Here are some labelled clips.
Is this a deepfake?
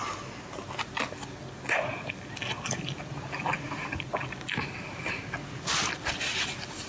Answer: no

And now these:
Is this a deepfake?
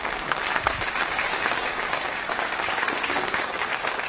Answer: yes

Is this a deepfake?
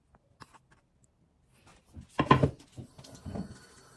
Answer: no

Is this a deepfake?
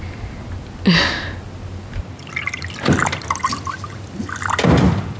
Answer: no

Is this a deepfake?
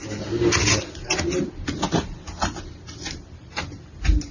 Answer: no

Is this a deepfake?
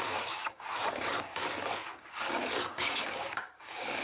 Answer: yes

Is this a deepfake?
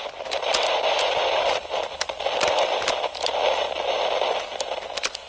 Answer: no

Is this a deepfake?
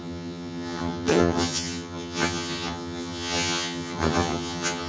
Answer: yes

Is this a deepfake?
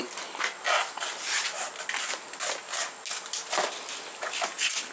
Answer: no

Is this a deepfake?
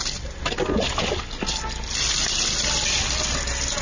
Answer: no